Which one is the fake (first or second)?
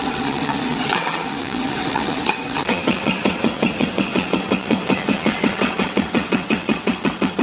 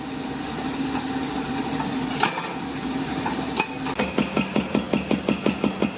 first